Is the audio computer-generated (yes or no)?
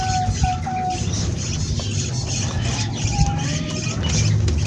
no